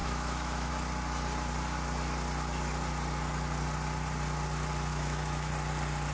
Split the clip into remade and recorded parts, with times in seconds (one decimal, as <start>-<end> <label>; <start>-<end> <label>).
0.0-0.7 remade; 0.7-4.9 recorded; 4.9-5.5 remade; 5.5-6.1 recorded